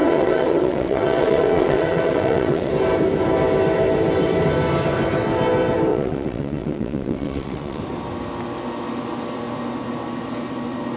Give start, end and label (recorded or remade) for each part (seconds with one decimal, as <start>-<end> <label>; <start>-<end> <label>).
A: 0.0-2.7 remade; 2.7-5.9 recorded; 5.9-7.8 remade; 7.8-11.0 recorded